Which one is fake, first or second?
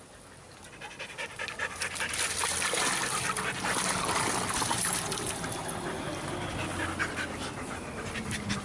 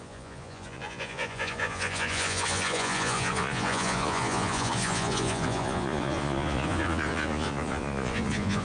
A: second